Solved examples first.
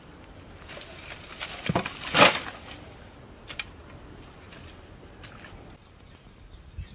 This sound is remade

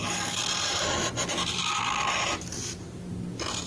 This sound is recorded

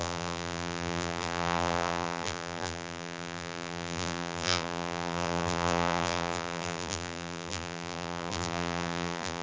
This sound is remade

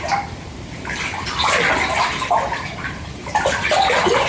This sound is recorded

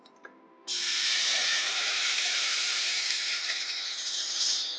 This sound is recorded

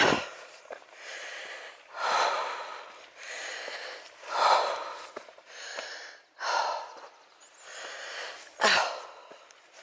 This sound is remade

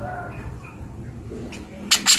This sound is recorded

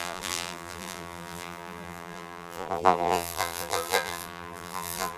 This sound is remade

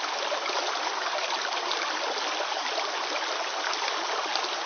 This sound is recorded